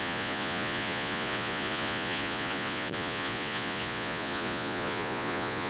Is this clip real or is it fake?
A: fake